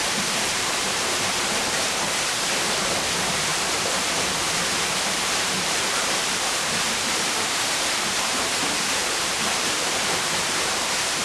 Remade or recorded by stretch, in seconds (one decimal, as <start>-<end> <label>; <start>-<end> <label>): 0.0-11.2 remade